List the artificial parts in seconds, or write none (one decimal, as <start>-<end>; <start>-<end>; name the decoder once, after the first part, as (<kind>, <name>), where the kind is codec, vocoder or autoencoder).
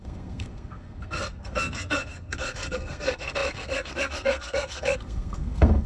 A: 0.0-5.9 (codec, SNAC)